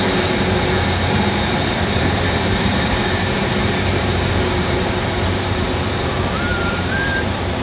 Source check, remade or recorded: remade